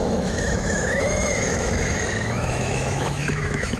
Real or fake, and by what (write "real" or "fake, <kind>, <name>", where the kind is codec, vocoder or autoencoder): fake, autoencoder, DAC-VAE